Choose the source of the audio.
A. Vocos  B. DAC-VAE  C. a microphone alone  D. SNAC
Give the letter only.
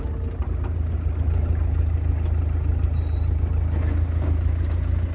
C